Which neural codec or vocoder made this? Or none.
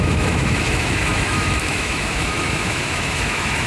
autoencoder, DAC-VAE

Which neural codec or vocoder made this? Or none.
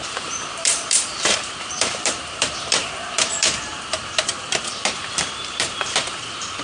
vocoder, BigVGAN v2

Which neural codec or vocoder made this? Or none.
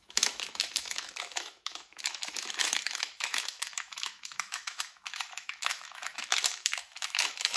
autoencoder, DAC-VAE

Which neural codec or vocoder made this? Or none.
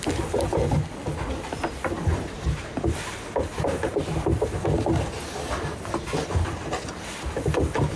none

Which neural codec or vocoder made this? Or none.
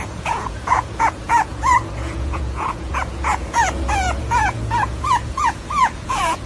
vocoder, Vocos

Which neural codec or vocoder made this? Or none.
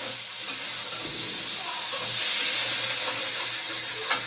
none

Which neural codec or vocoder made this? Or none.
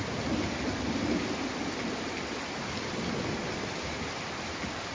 none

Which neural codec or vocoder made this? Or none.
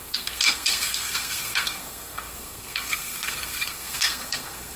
codec, SNAC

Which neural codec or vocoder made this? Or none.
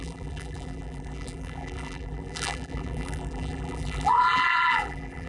vocoder, BigVGAN v2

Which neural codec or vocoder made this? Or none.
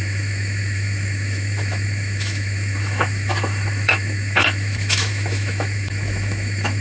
autoencoder, DAC-VAE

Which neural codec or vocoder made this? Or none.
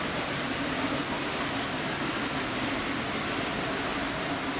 none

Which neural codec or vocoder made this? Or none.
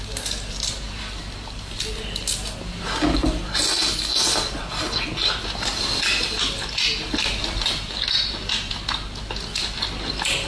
none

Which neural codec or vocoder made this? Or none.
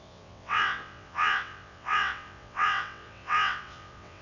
vocoder, WaveNeXt